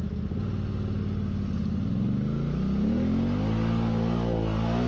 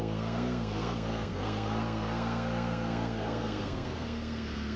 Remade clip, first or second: second